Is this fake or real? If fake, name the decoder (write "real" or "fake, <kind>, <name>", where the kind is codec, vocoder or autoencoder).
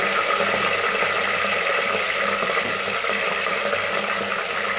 real